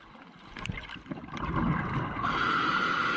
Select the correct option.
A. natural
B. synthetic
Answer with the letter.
A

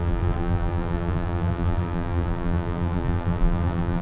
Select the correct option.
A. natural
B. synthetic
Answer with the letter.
B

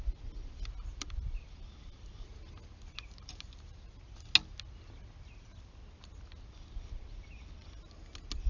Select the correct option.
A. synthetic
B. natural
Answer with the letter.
B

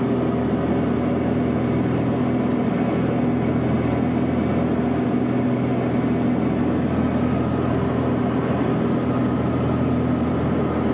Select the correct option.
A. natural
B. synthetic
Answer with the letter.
A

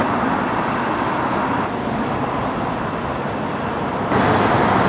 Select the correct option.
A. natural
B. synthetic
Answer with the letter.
B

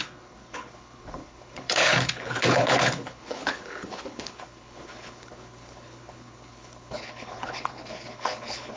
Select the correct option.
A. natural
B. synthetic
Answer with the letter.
B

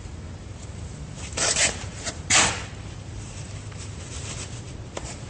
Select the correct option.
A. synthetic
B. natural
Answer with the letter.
A